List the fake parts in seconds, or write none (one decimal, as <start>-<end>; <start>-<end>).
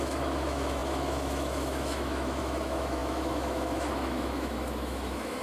0.0-5.4